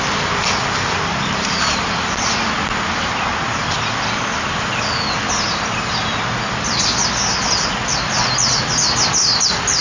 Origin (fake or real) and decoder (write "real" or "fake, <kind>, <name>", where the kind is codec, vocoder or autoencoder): real